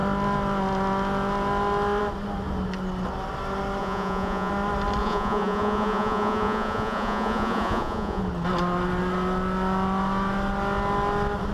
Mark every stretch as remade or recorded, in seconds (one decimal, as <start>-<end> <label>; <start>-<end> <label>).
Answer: 0.0-3.8 recorded; 3.8-4.5 remade; 4.5-5.0 recorded; 5.0-8.2 remade; 8.2-11.5 recorded